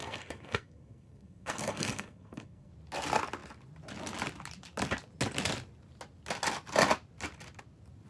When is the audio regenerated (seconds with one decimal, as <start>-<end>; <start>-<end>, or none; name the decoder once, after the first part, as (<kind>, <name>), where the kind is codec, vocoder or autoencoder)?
0.0-2.7 (codec, SNAC)